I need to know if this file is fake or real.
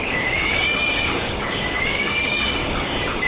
fake